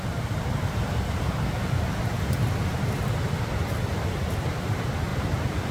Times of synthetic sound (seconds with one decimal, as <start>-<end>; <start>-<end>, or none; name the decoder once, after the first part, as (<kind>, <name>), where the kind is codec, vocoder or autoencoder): none